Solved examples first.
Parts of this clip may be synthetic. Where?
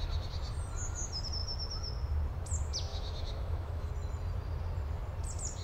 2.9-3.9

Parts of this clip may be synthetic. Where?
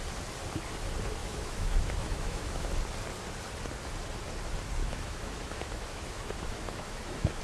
1.2-2.7; 4.8-7.4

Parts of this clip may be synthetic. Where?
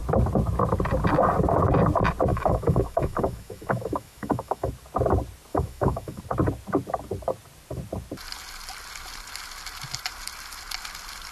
2.3-4.7; 5.5-6.2